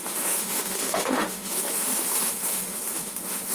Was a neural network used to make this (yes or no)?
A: yes